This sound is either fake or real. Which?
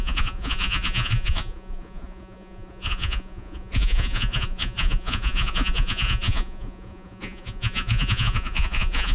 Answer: fake